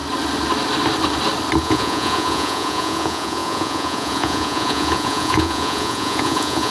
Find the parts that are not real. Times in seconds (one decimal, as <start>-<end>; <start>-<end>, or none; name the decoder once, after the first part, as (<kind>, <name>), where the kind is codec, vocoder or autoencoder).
1.6-6.7 (vocoder, Vocos)